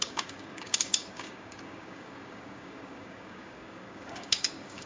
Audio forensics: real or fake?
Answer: fake